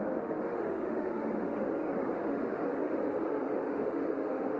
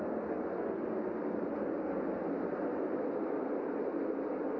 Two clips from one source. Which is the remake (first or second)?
first